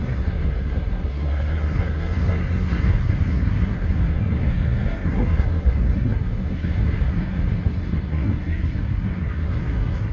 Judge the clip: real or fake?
fake